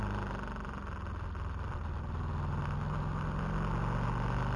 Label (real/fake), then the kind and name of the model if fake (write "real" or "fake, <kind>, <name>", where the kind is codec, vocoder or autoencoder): real